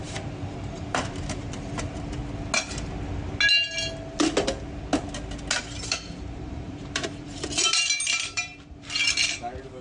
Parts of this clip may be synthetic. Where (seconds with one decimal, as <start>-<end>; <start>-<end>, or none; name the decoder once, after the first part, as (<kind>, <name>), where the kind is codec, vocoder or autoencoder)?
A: 0.0-2.2 (vocoder, BigVGAN v2); 5.6-9.8